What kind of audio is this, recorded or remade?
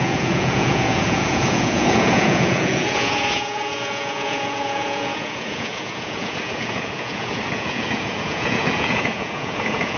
remade